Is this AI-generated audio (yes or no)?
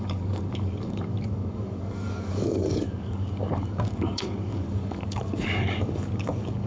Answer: yes